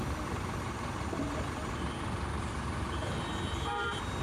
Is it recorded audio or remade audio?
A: recorded